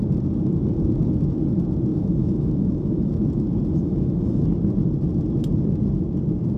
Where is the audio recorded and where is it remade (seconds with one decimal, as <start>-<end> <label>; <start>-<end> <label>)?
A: 0.0-1.9 recorded; 1.9-3.1 remade; 3.1-3.8 recorded; 3.8-4.4 remade; 4.4-6.6 recorded

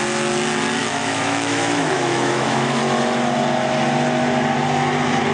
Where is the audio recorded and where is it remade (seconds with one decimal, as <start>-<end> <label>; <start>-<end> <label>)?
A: 0.0-0.8 recorded; 0.8-2.8 remade; 2.8-5.3 recorded

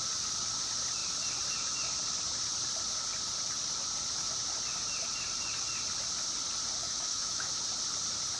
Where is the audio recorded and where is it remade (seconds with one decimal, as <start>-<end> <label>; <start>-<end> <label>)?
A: 0.0-6.8 recorded; 6.8-7.5 remade; 7.5-8.4 recorded

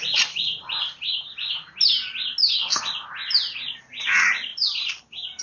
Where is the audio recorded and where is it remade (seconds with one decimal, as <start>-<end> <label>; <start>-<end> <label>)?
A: 0.0-5.4 recorded

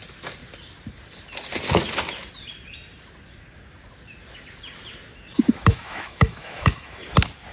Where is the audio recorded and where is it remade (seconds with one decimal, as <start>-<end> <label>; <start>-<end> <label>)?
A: 0.0-5.7 recorded; 5.7-7.0 remade; 7.0-7.5 recorded